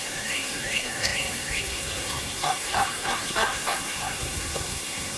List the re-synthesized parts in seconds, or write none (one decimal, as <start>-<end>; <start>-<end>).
0.0-5.2